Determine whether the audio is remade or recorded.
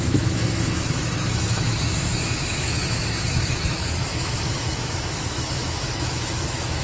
remade